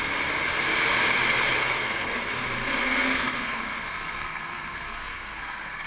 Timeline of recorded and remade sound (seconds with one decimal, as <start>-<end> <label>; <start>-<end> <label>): 0.0-1.6 recorded; 1.6-2.2 remade; 2.2-2.8 recorded; 2.8-5.9 remade